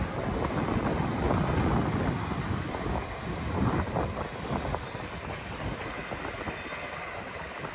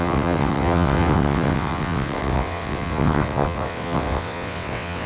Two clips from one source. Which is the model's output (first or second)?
second